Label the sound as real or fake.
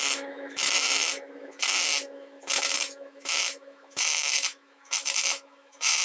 fake